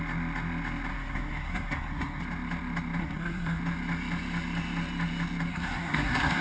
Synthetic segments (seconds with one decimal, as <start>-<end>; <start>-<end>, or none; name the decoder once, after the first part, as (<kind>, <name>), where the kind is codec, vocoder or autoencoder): 0.9-2.2 (codec, SNAC); 3.0-3.6; 5.5-6.4

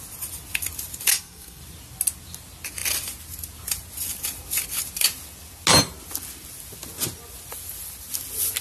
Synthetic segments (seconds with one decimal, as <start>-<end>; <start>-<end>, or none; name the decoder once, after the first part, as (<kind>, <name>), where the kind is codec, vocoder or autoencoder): 1.1-1.6 (codec, SNAC)

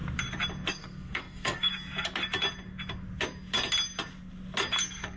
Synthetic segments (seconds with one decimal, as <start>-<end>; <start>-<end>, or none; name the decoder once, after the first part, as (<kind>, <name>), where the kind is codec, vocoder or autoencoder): 0.7-1.7 (codec, SNAC); 4.8-5.2

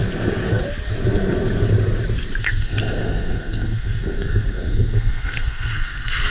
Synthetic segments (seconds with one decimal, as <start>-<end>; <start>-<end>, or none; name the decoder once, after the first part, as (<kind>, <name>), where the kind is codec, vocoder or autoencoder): 2.4-6.3 (codec, SNAC)